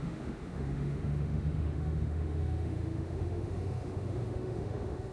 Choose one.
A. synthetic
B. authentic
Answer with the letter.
A